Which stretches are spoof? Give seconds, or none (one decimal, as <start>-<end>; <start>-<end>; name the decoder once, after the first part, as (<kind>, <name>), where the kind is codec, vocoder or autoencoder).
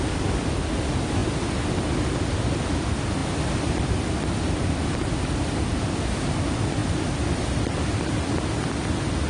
none